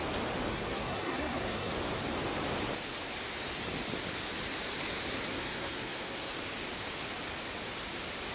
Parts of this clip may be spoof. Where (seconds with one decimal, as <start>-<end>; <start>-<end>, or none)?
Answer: 0.5-1.7; 5.3-6.3